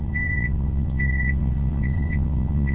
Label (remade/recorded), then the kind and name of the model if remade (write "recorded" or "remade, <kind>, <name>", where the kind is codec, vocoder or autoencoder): remade, vocoder, WaveNeXt